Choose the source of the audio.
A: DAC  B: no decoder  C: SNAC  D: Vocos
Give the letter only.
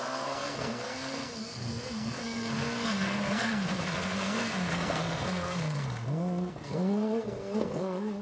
C